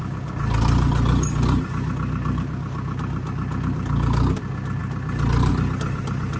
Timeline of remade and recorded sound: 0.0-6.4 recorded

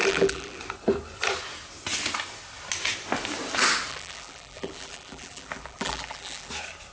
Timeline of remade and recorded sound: 0.0-0.6 remade; 0.6-3.9 recorded; 3.9-6.5 remade; 6.5-6.9 recorded

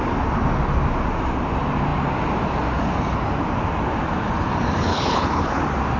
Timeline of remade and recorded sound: 0.0-4.9 recorded; 4.9-5.6 remade; 5.6-6.0 recorded

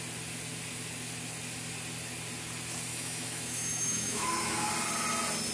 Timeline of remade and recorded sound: 0.0-2.9 recorded; 2.9-4.7 remade; 4.7-5.5 recorded

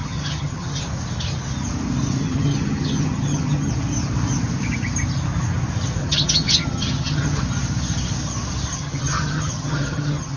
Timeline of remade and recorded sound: 0.0-0.8 remade; 0.8-2.2 recorded; 2.2-3.7 remade; 3.7-6.0 recorded; 6.0-7.4 remade; 7.4-8.7 recorded; 8.7-10.4 remade